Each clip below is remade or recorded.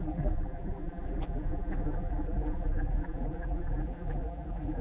remade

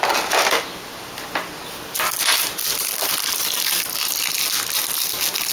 recorded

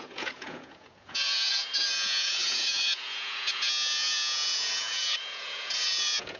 remade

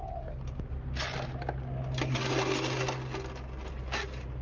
recorded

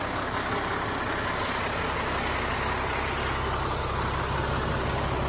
recorded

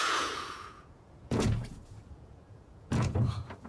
remade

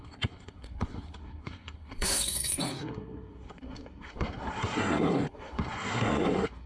remade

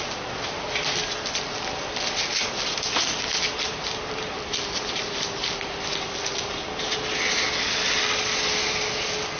recorded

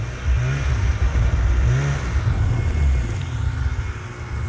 recorded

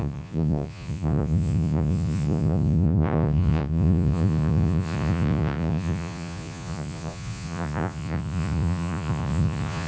remade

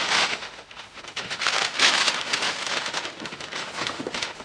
remade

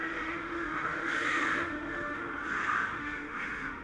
remade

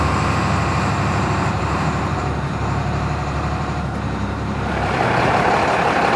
remade